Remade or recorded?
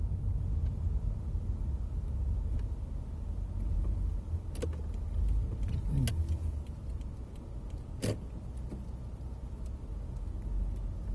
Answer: recorded